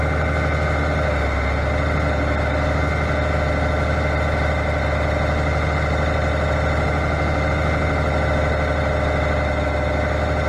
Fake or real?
real